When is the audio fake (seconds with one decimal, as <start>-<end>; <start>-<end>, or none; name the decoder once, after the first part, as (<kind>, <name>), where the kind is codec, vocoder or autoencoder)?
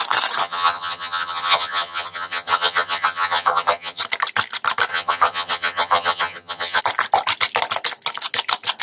0.4-4.0 (vocoder, HiFi-GAN); 4.9-6.8